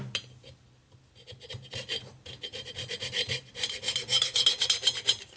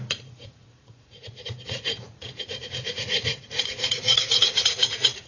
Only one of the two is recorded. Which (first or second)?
first